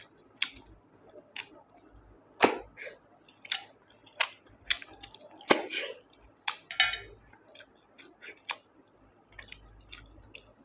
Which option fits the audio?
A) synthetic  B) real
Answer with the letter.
B